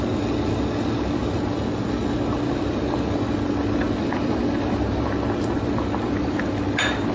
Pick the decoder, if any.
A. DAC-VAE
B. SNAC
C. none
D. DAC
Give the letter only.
C